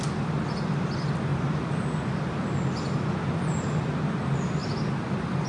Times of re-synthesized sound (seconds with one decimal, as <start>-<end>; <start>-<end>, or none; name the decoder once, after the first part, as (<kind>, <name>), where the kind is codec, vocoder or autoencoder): none